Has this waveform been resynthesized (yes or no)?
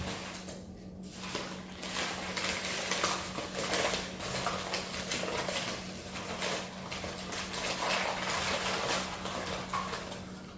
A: no